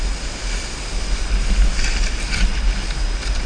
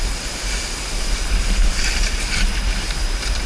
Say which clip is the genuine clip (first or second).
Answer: first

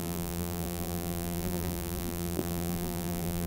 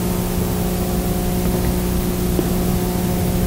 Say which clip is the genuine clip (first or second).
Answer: second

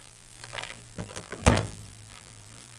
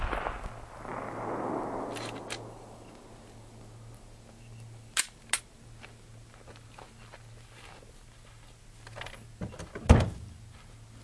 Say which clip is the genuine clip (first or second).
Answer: second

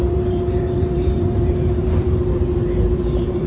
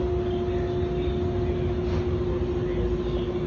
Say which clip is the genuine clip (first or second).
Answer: second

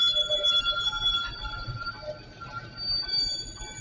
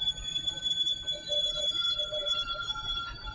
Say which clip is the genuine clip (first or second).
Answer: first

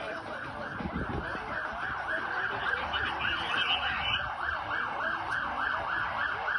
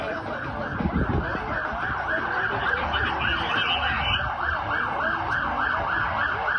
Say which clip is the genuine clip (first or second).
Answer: second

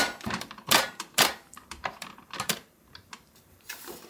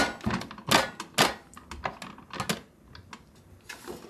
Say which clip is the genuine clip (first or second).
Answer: second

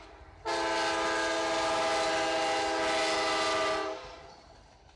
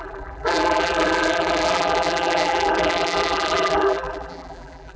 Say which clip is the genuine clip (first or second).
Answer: first